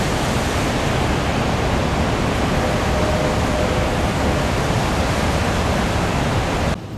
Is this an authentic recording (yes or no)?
yes